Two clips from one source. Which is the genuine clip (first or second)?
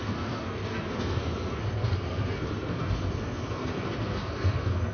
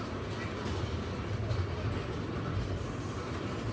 second